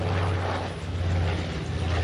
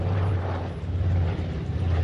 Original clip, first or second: first